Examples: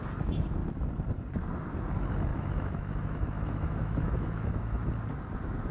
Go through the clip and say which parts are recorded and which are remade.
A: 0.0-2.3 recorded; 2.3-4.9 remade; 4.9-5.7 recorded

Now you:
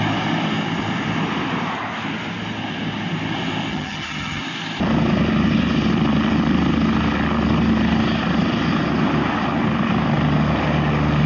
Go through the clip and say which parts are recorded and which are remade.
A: 0.0-3.7 recorded; 3.7-4.4 remade; 4.4-11.3 recorded

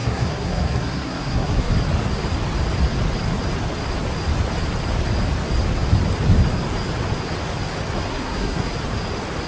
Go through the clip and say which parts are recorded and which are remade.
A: 0.0-1.7 remade; 1.7-8.1 recorded; 8.1-8.7 remade; 8.7-9.5 recorded

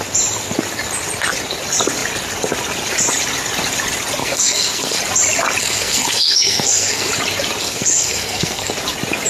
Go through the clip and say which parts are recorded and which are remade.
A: 0.0-4.2 recorded; 4.2-5.0 remade; 5.0-5.6 recorded; 5.6-7.1 remade; 7.1-7.6 recorded; 7.6-8.7 remade; 8.7-9.3 recorded

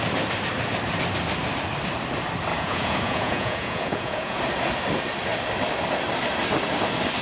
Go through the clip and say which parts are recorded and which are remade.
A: 0.0-2.5 recorded; 2.5-4.4 remade; 4.4-7.2 recorded

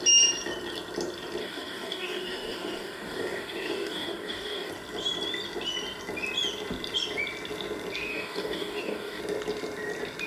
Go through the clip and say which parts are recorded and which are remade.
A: 0.0-1.4 recorded; 1.4-4.7 remade; 4.7-8.1 recorded; 8.1-9.2 remade; 9.2-10.3 recorded

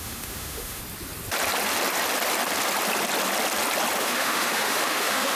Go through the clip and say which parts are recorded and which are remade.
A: 0.0-0.8 remade; 0.8-4.0 recorded; 4.0-5.4 remade

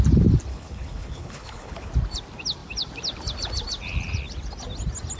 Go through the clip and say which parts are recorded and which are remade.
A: 0.0-0.5 recorded; 0.5-1.9 remade; 1.9-5.2 recorded